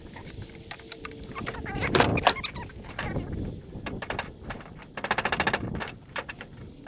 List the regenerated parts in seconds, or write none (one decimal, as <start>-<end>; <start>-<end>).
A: none

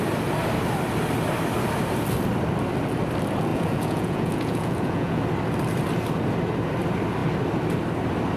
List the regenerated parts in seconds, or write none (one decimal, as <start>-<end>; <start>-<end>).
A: 3.5-5.2

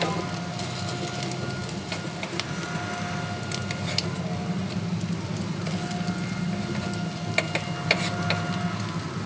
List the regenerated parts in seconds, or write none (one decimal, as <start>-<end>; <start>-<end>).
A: none

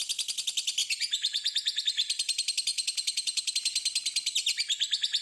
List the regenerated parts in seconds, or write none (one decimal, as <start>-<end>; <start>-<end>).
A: 0.8-1.8; 2.7-3.5